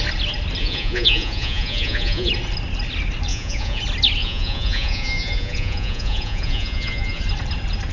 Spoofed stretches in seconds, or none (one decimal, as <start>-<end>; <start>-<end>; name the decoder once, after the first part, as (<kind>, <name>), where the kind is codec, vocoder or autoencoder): 0.6-2.3 (vocoder, Vocos); 3.3-3.8; 4.2-7.2